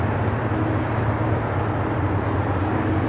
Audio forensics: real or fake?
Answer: real